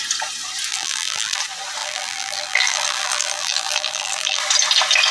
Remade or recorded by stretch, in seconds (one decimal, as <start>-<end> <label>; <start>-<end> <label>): 0.0-0.7 recorded; 0.7-1.4 remade; 1.4-1.8 recorded; 1.8-4.4 remade; 4.4-5.1 recorded